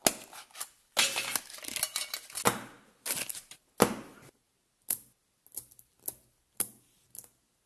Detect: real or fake real